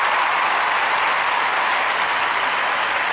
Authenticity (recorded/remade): recorded